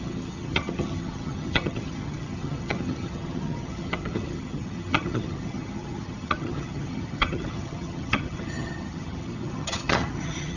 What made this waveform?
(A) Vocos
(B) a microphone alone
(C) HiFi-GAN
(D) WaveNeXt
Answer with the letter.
C